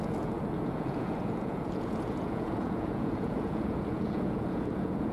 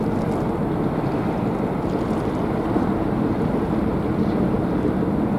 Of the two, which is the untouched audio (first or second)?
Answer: second